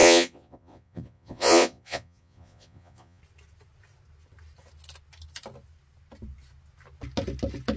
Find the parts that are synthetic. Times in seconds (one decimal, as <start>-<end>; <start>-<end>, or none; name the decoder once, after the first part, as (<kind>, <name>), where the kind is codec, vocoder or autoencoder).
0.0-3.2 (vocoder, Vocos)